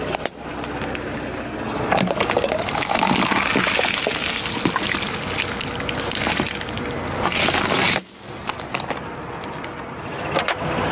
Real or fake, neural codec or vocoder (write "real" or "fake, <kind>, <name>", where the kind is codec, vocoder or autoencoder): real